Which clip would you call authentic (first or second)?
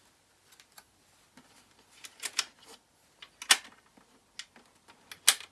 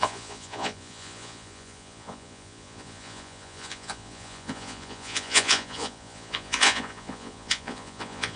first